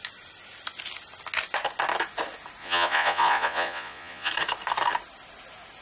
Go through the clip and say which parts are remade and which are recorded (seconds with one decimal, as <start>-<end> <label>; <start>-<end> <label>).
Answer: 0.0-2.6 recorded; 2.6-4.3 remade; 4.3-5.8 recorded